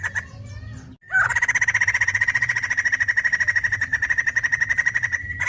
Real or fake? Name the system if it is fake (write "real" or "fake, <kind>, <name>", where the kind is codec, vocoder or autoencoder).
real